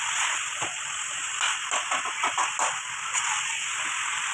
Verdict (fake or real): real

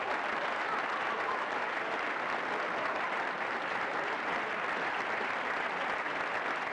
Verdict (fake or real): real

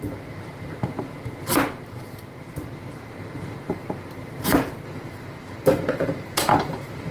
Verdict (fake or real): fake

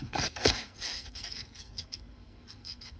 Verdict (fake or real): fake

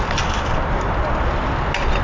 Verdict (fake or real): real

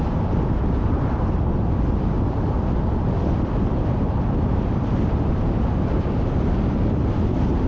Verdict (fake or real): real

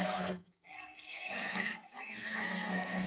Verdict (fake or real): fake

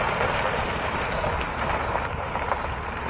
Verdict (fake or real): fake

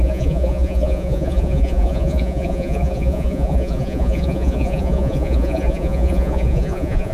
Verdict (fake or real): fake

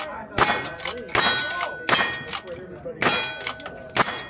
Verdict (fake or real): real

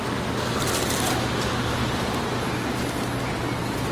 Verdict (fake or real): real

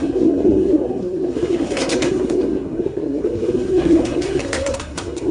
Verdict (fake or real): fake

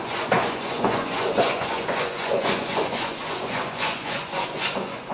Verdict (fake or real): fake